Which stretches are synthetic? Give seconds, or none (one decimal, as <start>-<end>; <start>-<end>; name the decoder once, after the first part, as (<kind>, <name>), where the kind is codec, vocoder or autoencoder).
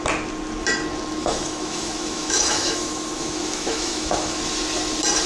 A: 1.2-4.4 (autoencoder, DAC-VAE)